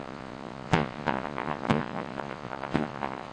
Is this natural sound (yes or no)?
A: no